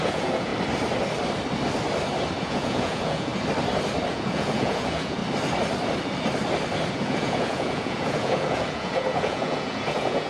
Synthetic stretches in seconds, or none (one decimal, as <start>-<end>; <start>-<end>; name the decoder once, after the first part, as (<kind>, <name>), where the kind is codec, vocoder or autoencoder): 0.0-0.5 (vocoder, Vocos); 2.4-3.3; 4.1-5.2; 6.9-10.3